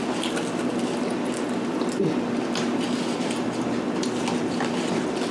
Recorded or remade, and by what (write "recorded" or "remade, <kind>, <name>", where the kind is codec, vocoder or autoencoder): recorded